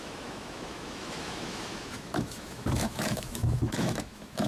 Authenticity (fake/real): fake